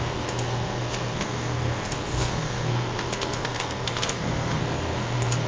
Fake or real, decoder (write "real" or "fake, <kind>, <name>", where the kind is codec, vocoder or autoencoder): fake, codec, SNAC